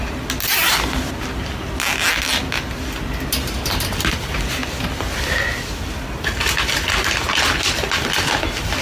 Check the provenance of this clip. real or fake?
real